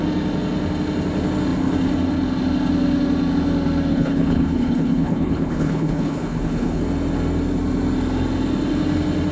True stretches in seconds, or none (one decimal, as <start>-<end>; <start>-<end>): 0.0-3.9; 6.8-9.3